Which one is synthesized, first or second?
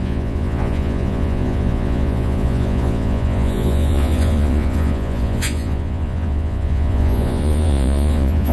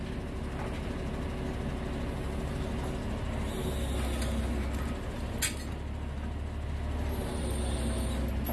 first